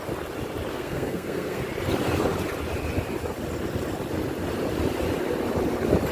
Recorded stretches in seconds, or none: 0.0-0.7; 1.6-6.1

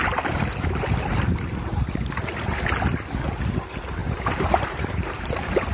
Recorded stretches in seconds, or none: 0.0-4.0; 5.2-5.7

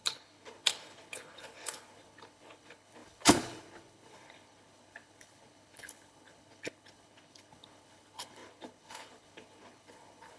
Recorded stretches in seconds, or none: none

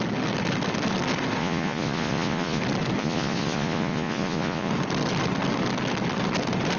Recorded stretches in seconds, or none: 0.0-1.4; 2.6-3.0; 4.7-6.8

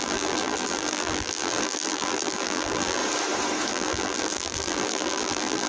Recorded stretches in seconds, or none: 3.0-3.7